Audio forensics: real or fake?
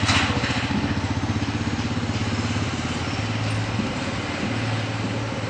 fake